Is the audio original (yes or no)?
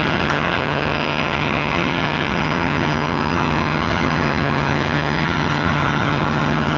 no